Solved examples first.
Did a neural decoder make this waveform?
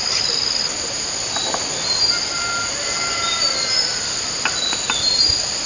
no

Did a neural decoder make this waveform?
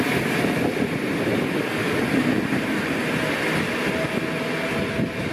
no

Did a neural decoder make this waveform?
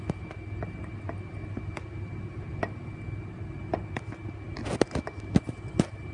no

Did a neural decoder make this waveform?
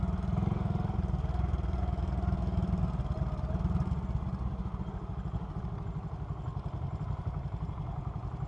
no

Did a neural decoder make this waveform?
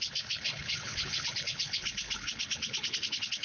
yes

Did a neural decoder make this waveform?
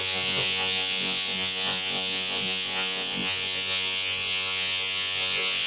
yes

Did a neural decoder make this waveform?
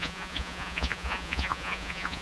yes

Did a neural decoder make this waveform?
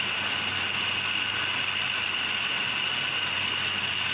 no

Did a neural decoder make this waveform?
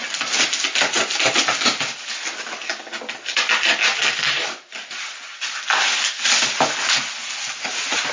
no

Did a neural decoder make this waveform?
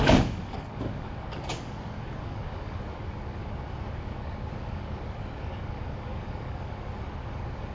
yes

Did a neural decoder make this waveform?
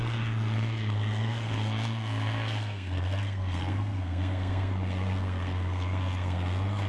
yes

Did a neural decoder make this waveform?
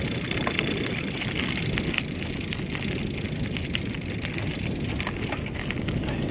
no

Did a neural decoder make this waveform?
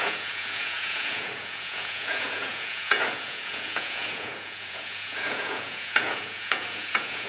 yes